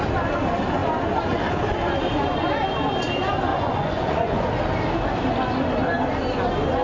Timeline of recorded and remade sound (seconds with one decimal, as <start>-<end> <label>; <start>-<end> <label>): 0.0-3.5 recorded; 3.5-4.5 remade; 4.5-6.8 recorded